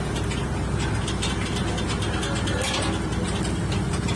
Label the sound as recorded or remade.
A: recorded